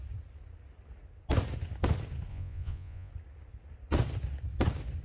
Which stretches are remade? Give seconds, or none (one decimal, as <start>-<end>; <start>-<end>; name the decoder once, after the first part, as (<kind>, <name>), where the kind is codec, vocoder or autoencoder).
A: 2.3-3.1 (vocoder, Vocos)